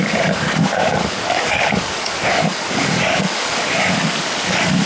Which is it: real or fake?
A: fake